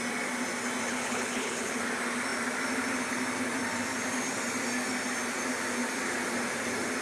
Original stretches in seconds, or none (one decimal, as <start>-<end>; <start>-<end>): 0.0-0.9; 1.8-7.0